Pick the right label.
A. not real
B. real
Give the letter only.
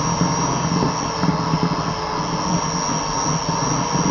B